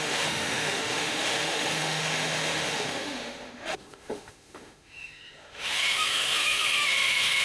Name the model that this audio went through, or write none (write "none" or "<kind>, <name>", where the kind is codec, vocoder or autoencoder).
autoencoder, DAC-VAE